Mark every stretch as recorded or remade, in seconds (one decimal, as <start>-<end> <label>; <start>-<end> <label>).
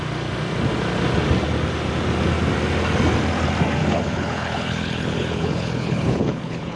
0.0-3.8 recorded; 3.8-6.8 remade